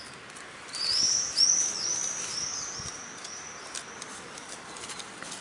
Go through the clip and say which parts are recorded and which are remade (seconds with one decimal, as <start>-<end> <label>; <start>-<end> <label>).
0.0-5.4 recorded